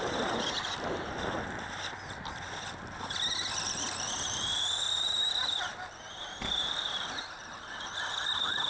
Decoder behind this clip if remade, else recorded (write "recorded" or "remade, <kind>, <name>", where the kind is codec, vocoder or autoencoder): recorded